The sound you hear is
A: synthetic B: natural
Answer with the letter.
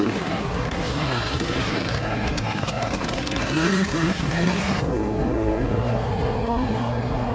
A